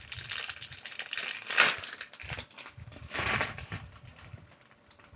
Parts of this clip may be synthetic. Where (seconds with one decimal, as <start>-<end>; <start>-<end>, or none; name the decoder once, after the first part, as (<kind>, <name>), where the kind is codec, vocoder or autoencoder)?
0.0-5.2 (vocoder, BigVGAN v2)

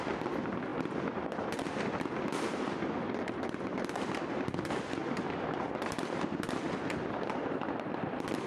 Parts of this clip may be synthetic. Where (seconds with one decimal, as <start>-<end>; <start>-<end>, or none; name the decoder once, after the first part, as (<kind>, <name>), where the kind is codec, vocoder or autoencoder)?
0.0-0.7 (vocoder, BigVGAN v2); 1.2-5.0; 5.7-8.5

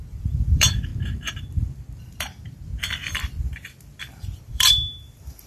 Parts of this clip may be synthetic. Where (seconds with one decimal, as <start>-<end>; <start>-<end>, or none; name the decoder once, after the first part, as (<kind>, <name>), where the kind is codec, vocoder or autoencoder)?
0.0-0.9 (vocoder, BigVGAN v2); 2.0-2.7; 4.0-5.5

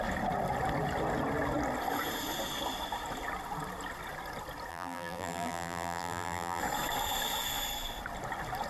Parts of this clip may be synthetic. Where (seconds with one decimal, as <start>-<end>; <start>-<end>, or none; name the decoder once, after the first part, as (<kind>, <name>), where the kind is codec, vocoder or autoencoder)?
4.7-6.6 (vocoder, BigVGAN v2)